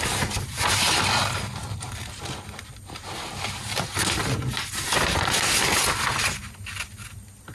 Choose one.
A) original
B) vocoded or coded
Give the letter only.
A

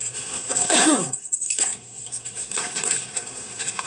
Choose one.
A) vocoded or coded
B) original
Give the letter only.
A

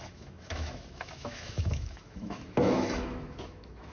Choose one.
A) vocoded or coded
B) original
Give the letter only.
A